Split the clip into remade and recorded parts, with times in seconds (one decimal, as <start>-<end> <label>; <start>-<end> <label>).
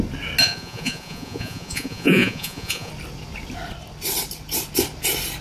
0.0-0.4 recorded; 0.4-2.9 remade; 2.9-5.4 recorded